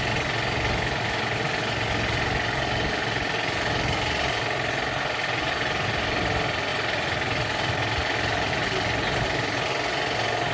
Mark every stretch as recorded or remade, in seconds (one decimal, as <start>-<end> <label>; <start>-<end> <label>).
0.0-10.5 recorded